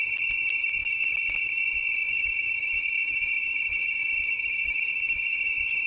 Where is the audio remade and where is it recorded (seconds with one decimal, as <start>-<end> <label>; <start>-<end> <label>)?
0.0-0.8 recorded; 0.8-1.6 remade; 1.6-2.0 recorded; 2.0-5.5 remade; 5.5-5.9 recorded